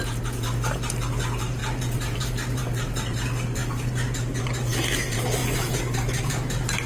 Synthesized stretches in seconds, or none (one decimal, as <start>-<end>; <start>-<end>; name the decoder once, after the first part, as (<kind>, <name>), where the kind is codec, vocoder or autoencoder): 0.0-6.9 (vocoder, BigVGAN v2)